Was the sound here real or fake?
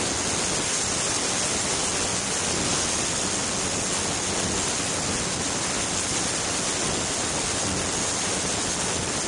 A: real